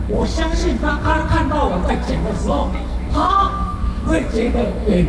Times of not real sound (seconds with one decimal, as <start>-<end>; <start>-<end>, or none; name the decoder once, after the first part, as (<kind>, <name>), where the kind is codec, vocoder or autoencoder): 0.0-1.2 (codec, SNAC); 1.9-5.1